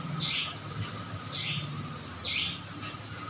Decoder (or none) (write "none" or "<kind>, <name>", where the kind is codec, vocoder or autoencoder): none